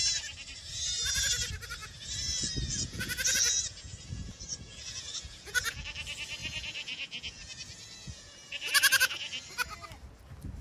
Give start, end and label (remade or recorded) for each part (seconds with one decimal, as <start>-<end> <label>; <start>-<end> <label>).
0.0-1.8 recorded; 1.8-5.8 remade; 5.8-6.4 recorded; 6.4-8.7 remade; 8.7-10.6 recorded